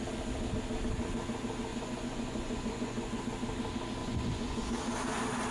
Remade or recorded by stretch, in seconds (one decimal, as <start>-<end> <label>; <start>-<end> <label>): 0.0-1.7 recorded; 1.7-3.2 remade; 3.2-4.0 recorded; 4.0-4.6 remade; 4.6-5.5 recorded